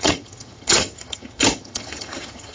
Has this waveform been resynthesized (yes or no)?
yes